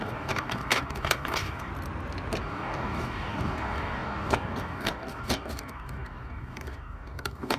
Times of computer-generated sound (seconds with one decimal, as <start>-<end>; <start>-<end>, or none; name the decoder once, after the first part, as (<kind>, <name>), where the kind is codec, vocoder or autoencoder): 0.0-1.7 (codec, DAC); 2.4-7.6